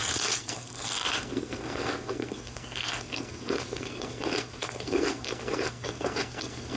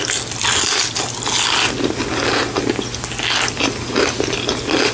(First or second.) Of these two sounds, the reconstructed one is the first